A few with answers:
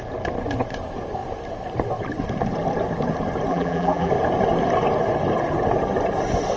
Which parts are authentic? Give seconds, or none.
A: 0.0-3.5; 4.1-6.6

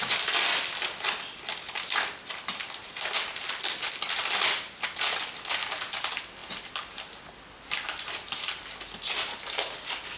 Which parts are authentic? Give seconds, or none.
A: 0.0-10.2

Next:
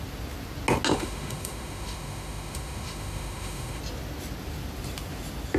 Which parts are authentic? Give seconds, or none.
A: 0.0-0.9; 3.8-5.6